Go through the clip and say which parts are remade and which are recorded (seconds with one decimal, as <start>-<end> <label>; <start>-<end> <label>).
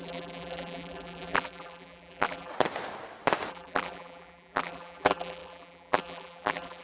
0.0-2.5 remade; 2.5-3.5 recorded; 3.5-6.8 remade